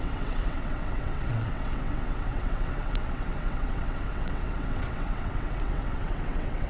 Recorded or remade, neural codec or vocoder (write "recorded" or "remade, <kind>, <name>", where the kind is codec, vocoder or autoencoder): remade, vocoder, WaveNeXt